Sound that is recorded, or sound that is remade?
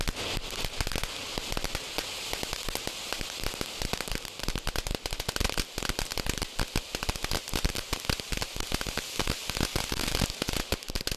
recorded